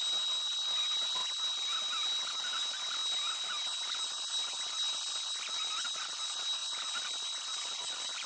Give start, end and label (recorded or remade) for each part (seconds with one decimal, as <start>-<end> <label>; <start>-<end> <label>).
0.0-8.3 recorded